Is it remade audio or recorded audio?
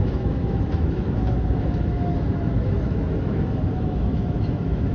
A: remade